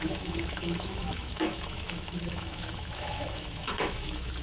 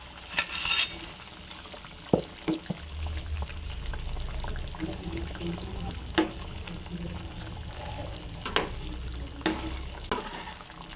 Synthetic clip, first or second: first